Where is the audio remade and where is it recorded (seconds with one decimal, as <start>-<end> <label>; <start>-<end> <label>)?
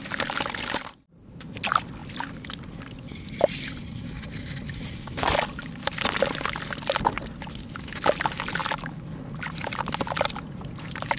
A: 0.0-11.2 recorded